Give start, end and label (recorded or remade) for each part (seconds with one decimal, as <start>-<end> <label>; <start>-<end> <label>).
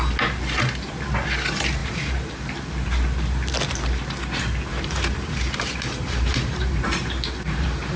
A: 0.0-1.8 recorded; 1.8-2.7 remade; 2.7-4.7 recorded; 4.7-8.0 remade